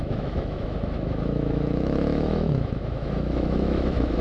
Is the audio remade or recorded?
remade